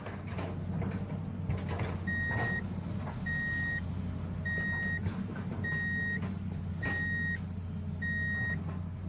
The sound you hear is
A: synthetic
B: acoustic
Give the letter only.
B